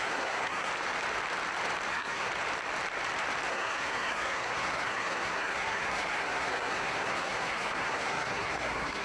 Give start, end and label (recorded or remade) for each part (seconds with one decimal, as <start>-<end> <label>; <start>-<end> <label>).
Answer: 0.0-0.7 remade; 0.7-1.9 recorded; 1.9-2.3 remade; 2.3-3.5 recorded; 3.5-9.0 remade